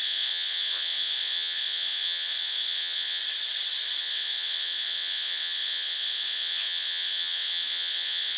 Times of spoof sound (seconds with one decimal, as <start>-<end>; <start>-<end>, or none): 0.0-3.2; 4.0-8.4